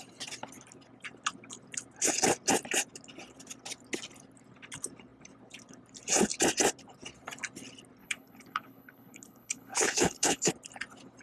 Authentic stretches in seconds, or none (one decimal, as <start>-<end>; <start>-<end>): 0.0-8.0; 10.5-11.2